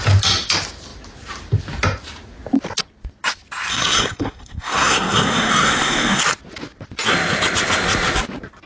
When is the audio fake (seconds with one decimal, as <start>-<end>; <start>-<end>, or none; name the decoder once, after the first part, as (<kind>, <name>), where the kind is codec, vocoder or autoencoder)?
3.7-6.2 (codec, SNAC)